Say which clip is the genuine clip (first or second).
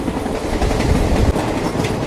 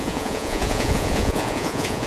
first